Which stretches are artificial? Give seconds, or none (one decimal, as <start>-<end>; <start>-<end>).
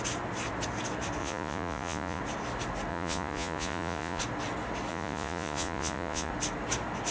1.2-2.2; 2.9-4.2; 4.9-6.3